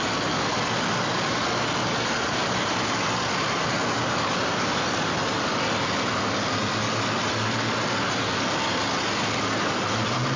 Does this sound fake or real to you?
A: real